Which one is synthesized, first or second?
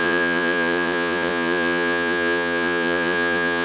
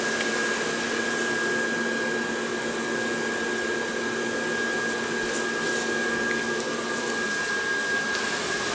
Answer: first